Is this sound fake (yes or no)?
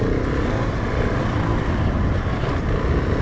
no